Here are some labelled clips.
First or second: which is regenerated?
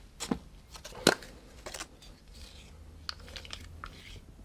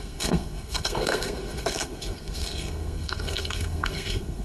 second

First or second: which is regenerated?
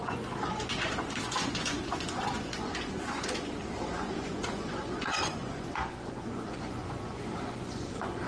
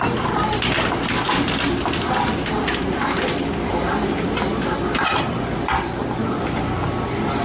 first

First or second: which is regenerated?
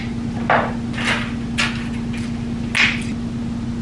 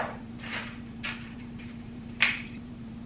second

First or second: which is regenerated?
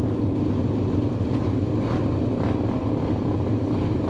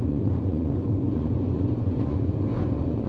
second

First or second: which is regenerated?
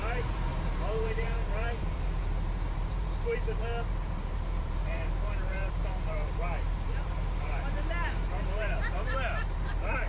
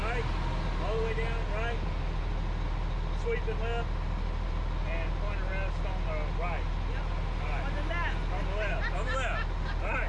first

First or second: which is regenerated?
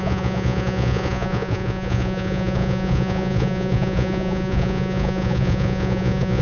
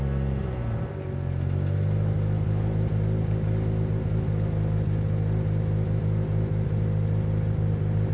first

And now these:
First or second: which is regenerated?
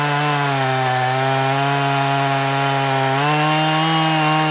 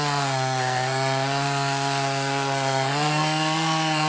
second